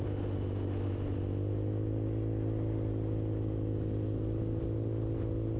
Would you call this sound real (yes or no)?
yes